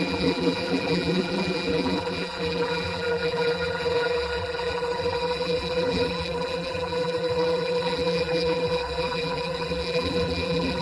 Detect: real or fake fake